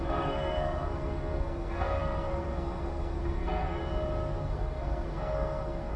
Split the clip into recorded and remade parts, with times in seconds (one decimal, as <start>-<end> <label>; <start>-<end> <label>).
0.0-3.8 remade; 3.8-4.4 recorded; 4.4-6.0 remade